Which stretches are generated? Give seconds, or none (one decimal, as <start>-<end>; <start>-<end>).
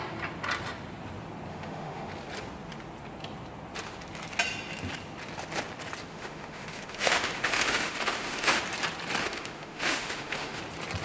1.5-2.1; 6.1-8.6; 9.2-10.6